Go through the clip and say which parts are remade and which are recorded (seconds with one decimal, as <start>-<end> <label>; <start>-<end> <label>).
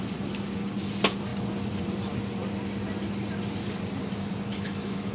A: 0.0-4.5 recorded; 4.5-5.1 remade